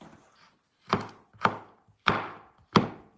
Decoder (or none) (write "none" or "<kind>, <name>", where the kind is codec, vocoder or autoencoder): none